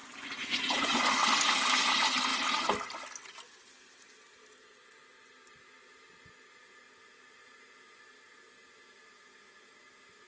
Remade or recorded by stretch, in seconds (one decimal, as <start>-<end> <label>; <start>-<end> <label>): 0.0-1.0 remade; 1.0-10.3 recorded